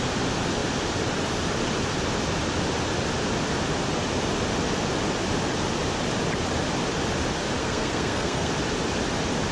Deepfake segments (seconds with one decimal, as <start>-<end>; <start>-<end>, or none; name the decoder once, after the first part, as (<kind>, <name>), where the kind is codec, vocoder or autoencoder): 7.6-8.5 (codec, SNAC)